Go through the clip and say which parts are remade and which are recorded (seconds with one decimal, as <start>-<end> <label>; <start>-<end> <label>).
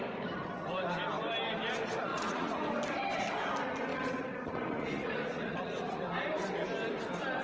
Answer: 0.0-2.1 recorded; 2.1-2.6 remade; 2.6-3.9 recorded; 3.9-6.0 remade; 6.0-7.4 recorded